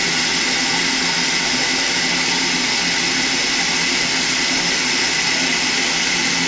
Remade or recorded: recorded